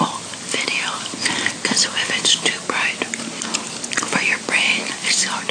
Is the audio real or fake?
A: real